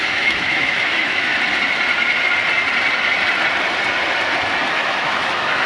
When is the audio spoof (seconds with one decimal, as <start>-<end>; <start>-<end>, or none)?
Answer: 0.0-1.3; 4.7-5.7